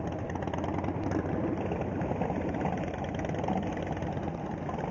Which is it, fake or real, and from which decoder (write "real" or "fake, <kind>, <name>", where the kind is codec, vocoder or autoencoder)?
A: real